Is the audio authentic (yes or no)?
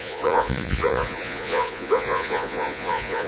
no